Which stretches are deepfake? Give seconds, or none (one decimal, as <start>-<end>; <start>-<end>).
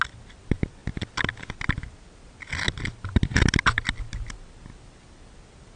none